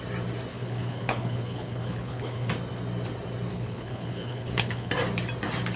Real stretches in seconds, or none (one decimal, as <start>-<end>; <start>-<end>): 0.0-0.5; 2.5-3.5; 4.9-5.8